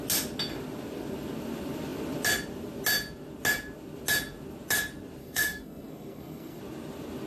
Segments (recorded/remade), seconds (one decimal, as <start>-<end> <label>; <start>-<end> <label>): 0.0-5.2 recorded; 5.2-6.6 remade; 6.6-7.3 recorded

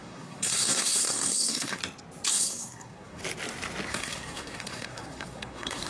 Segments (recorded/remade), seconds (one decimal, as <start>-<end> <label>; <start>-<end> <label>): 0.0-1.8 remade; 1.8-2.3 recorded; 2.3-3.2 remade; 3.2-3.9 recorded; 3.9-5.9 remade

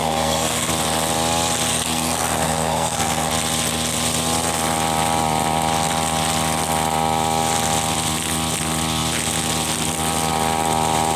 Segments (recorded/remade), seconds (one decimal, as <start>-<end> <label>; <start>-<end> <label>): 0.0-0.7 remade; 0.7-1.7 recorded; 1.7-3.3 remade; 3.3-11.2 recorded

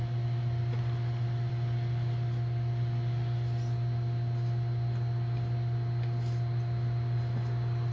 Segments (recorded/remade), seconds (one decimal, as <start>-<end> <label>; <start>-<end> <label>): 0.0-7.9 recorded

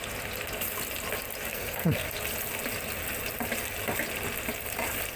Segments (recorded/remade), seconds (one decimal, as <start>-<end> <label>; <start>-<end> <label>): 0.0-1.5 recorded; 1.5-2.1 remade; 2.1-5.2 recorded

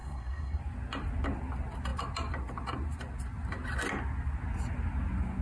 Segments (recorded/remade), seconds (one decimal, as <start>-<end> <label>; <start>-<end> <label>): 0.0-0.6 remade; 0.6-5.4 recorded

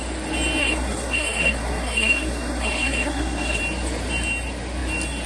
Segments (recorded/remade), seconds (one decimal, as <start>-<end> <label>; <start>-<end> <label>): 0.0-0.6 recorded; 0.6-3.6 remade; 3.6-5.3 recorded